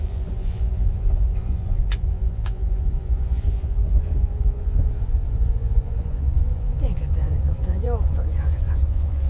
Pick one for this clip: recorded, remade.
remade